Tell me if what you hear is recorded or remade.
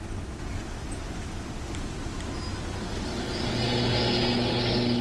recorded